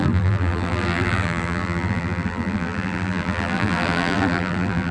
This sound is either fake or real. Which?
fake